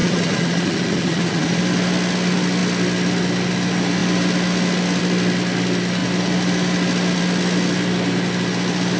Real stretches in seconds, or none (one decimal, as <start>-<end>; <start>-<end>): 1.6-9.0